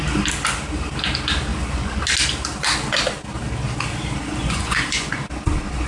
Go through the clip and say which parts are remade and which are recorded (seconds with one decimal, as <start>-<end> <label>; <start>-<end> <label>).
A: 0.0-1.5 recorded; 1.5-2.0 remade; 2.0-4.4 recorded; 4.4-5.2 remade; 5.2-5.9 recorded